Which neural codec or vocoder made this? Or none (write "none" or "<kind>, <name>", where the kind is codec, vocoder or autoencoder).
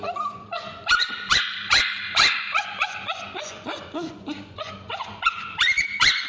vocoder, Vocos